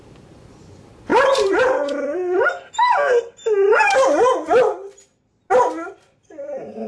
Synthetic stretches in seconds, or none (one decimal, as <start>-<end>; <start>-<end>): 0.0-2.4; 5.4-6.9